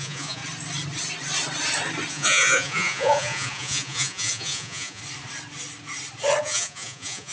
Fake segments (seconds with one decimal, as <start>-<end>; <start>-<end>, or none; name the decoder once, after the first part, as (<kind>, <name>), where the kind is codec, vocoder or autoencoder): 0.0-0.4 (vocoder, Vocos); 2.1-5.0; 6.4-7.3